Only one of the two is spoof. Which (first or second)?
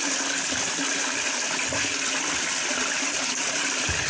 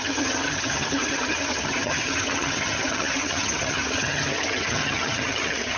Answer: second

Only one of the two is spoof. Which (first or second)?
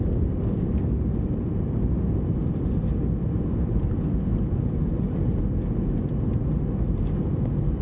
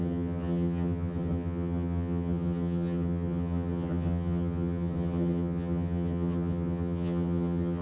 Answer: second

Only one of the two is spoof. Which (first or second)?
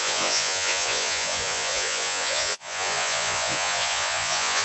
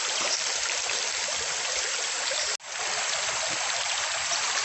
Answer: first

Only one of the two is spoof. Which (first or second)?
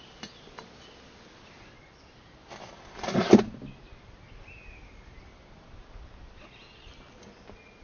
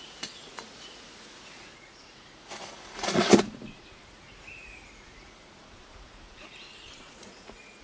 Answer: second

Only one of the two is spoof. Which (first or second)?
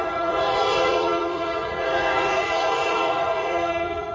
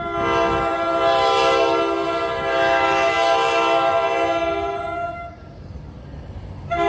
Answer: first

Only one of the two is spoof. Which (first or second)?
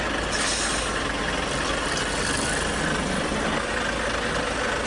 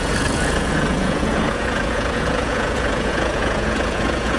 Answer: second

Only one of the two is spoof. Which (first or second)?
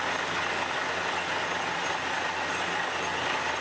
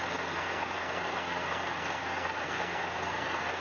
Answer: second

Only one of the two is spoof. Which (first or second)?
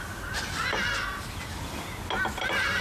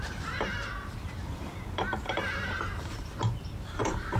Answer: second